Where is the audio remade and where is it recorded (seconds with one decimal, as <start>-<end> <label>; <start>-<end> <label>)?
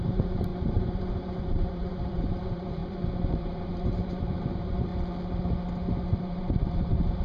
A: 0.0-4.9 remade; 4.9-6.2 recorded; 6.2-7.2 remade